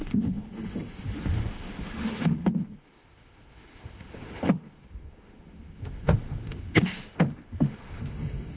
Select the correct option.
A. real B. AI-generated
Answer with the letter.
B